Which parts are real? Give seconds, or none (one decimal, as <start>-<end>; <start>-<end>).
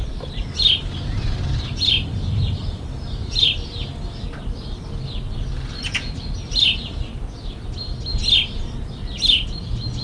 0.0-10.0